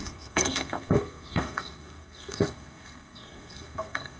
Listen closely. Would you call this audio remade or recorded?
remade